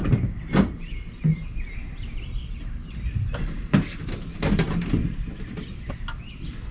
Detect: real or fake real